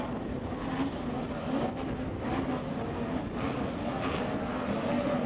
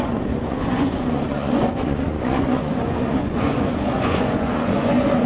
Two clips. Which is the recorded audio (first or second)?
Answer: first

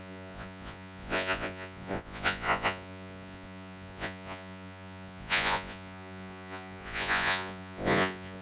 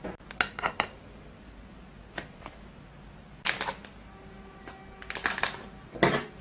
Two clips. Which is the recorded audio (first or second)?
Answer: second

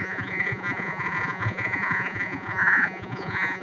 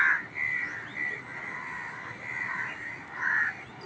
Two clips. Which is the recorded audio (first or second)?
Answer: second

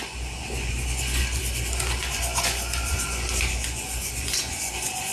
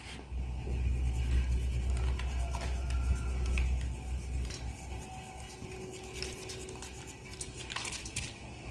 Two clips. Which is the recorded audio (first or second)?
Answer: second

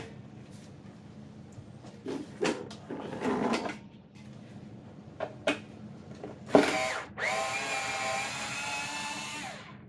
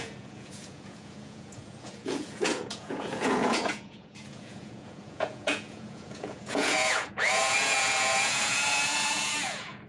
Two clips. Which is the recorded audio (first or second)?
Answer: first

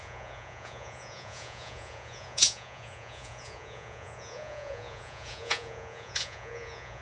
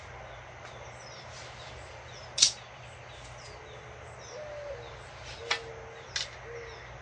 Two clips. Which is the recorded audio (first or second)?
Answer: second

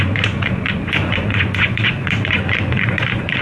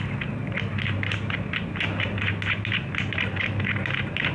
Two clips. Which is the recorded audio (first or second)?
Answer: second